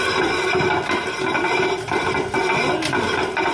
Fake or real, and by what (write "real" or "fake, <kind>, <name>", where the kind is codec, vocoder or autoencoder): real